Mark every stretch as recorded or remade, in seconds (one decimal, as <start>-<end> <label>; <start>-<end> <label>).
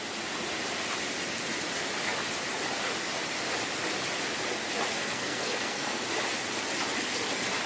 0.0-4.9 recorded; 4.9-6.0 remade; 6.0-7.7 recorded